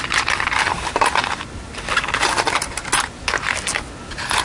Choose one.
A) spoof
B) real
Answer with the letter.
B